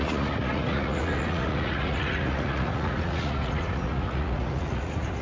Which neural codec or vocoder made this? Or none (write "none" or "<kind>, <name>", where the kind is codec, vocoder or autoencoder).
vocoder, Vocos